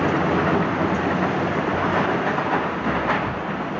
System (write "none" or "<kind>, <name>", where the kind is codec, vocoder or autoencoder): none